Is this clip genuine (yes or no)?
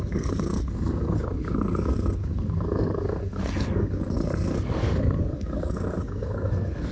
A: no